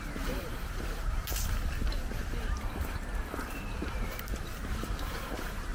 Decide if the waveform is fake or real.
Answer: fake